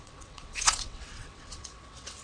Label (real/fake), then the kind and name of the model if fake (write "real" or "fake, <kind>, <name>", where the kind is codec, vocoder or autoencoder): fake, vocoder, WaveNeXt